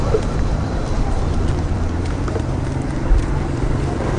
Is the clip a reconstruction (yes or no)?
yes